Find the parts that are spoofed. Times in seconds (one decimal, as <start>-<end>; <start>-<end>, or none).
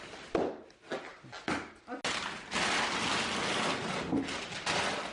none